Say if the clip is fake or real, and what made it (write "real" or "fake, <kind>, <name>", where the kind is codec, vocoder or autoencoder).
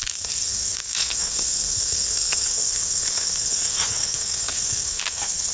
fake, codec, SNAC